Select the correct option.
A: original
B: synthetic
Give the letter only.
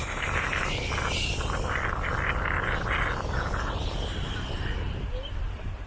A